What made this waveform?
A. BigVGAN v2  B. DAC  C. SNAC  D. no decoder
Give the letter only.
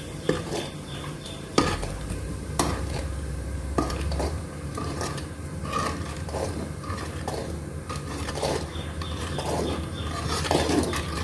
A